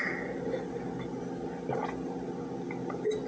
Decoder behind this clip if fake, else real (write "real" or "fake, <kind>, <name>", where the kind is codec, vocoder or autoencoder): real